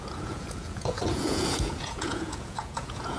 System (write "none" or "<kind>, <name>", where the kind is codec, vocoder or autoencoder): vocoder, Vocos